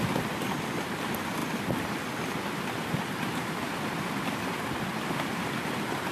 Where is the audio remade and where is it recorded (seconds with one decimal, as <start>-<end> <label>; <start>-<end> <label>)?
0.0-6.1 recorded